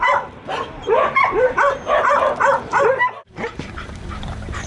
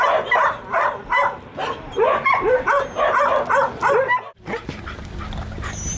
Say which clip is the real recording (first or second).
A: second